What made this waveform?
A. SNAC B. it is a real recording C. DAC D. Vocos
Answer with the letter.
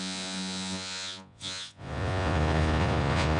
D